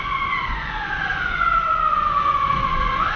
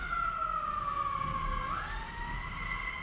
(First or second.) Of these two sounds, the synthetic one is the first